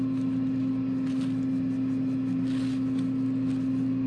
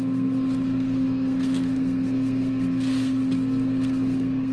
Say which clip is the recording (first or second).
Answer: first